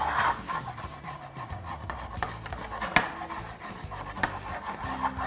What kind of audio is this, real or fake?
real